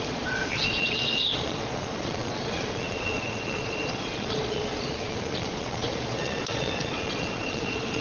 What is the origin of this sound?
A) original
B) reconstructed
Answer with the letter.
B